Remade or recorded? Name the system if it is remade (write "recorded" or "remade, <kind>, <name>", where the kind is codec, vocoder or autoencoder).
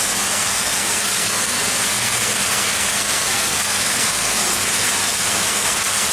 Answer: remade, codec, SNAC